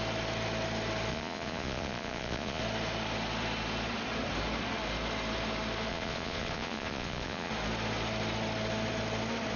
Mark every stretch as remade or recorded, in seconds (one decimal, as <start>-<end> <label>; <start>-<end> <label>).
0.0-1.1 recorded; 1.1-2.6 remade; 2.6-5.9 recorded; 5.9-7.5 remade; 7.5-9.6 recorded